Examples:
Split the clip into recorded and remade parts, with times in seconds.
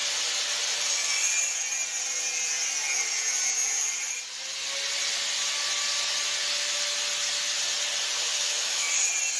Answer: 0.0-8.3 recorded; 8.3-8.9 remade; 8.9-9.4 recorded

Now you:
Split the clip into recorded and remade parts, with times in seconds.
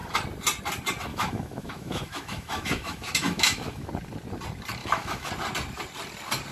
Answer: 0.0-1.1 recorded; 1.1-3.9 remade; 3.9-4.8 recorded; 4.8-5.3 remade; 5.3-6.5 recorded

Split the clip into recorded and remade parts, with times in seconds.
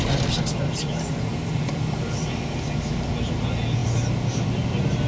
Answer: 0.0-5.1 recorded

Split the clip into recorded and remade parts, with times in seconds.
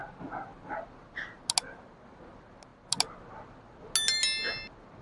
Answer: 0.0-5.0 recorded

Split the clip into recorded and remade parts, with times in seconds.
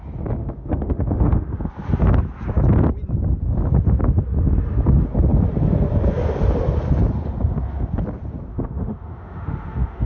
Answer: 0.0-0.4 recorded; 0.4-1.7 remade; 1.7-8.5 recorded; 8.5-10.1 remade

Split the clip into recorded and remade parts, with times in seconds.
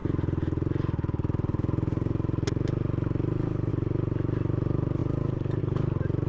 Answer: 0.0-6.3 recorded